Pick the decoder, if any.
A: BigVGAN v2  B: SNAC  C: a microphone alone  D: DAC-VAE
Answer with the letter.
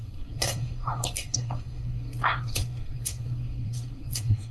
B